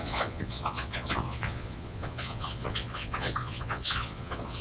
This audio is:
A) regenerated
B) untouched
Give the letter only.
A